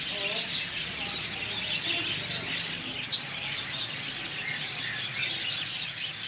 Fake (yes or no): no